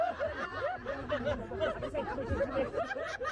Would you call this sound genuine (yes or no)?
no